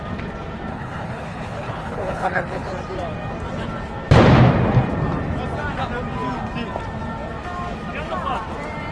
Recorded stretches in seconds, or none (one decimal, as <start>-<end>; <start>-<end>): 0.0-0.7; 2.7-8.9